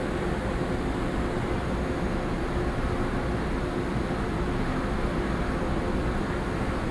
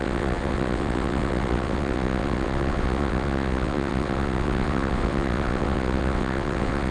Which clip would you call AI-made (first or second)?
second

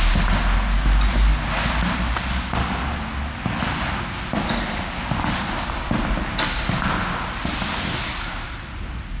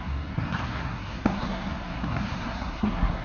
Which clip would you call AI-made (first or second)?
second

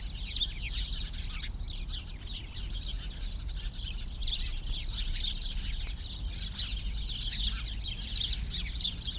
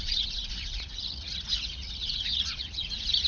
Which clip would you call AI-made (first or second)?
second